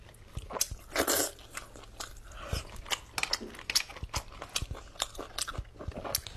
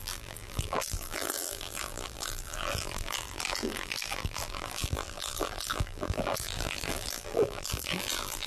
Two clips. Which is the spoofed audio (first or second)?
second